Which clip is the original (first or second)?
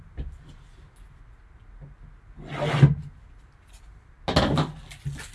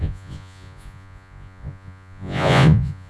first